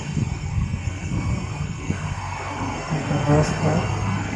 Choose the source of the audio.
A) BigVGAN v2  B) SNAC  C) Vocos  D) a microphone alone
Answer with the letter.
B